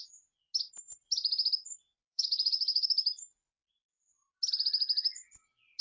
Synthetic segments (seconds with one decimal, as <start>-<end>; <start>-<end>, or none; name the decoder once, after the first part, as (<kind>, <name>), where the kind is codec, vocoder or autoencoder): 2.1-2.9 (codec, DAC)